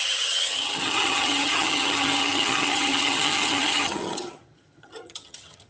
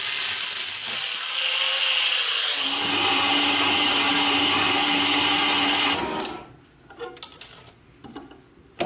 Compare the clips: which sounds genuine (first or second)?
second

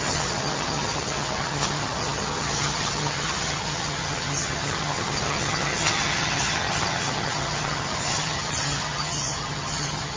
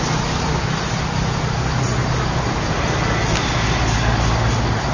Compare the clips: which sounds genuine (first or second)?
second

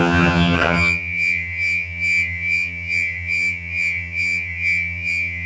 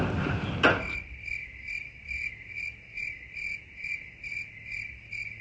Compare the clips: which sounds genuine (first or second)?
second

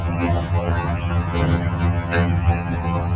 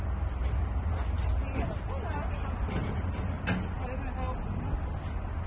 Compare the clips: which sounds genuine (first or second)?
second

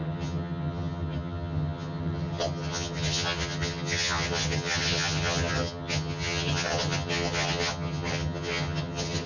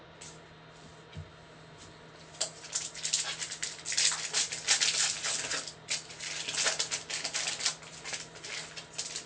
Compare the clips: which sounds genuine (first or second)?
second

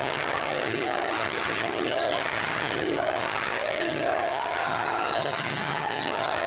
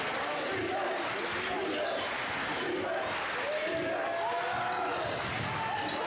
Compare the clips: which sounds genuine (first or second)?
second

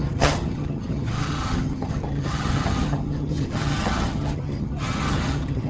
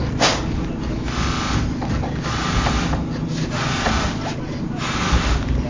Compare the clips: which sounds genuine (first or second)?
second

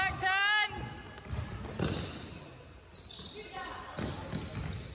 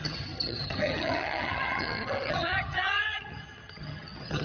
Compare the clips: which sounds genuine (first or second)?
first